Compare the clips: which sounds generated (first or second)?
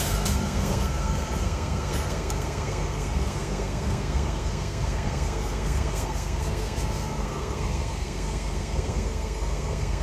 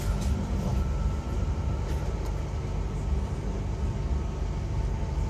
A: first